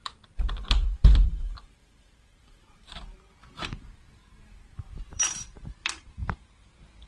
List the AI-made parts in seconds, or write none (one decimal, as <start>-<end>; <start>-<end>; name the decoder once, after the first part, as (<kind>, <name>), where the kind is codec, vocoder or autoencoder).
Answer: 0.0-3.1 (vocoder, BigVGAN v2); 3.8-7.1